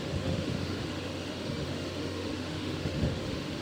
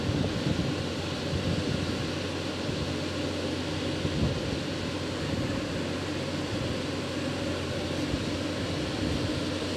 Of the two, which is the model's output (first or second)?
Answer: first